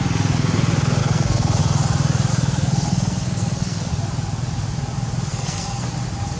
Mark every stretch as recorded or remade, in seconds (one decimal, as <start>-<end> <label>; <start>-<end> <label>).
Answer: 0.0-1.0 recorded; 1.0-1.6 remade; 1.6-2.3 recorded; 2.3-3.9 remade; 3.9-5.3 recorded; 5.3-5.9 remade; 5.9-6.4 recorded